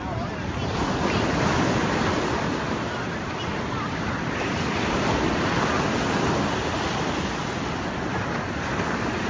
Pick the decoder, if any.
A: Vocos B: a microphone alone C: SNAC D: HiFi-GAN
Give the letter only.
B